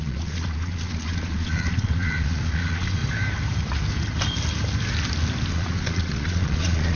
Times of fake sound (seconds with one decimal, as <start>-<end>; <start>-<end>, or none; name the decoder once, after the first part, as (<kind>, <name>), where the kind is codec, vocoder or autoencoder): 0.0-3.0 (vocoder, Vocos); 5.5-7.0